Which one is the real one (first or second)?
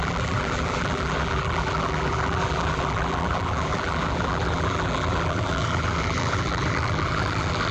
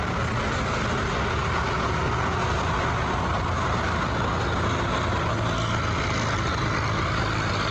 second